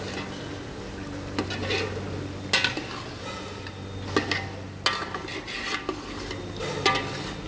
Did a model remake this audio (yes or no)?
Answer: no